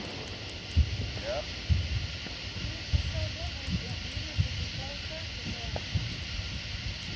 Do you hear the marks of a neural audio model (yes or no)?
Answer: no